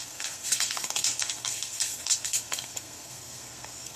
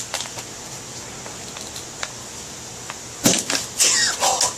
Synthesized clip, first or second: first